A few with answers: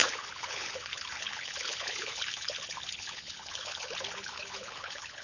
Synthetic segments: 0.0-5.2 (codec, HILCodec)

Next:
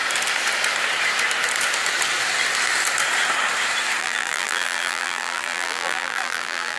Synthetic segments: 4.0-6.8 (vocoder, BigVGAN v2)

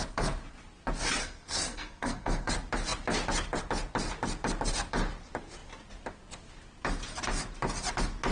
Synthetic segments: 1.2-2.5 (codec, SNAC)

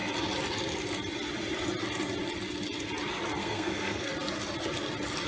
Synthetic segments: 3.4-4.1 (codec, SNAC)

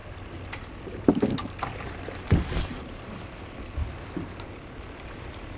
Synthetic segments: none

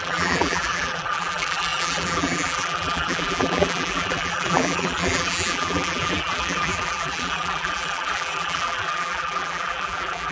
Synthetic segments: 0.0-10.3 (vocoder, BigVGAN v2)